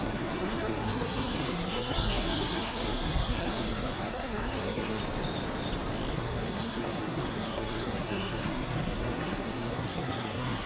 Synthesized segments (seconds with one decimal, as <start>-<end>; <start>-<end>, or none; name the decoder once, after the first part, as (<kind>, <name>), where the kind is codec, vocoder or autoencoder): 0.0-5.0 (codec, SNAC); 6.1-10.7